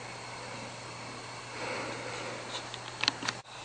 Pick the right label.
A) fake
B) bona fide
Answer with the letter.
B